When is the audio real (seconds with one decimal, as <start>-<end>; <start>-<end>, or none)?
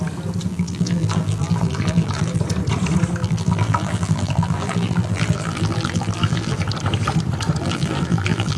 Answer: 0.0-0.5; 2.4-3.2; 6.6-7.6